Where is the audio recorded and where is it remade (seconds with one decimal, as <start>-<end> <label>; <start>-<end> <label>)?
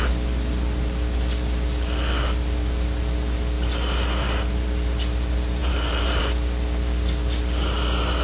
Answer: 0.0-5.6 recorded; 5.6-6.2 remade; 6.2-8.2 recorded